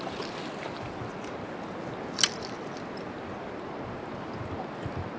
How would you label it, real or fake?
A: real